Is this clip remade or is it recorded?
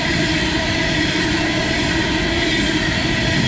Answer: recorded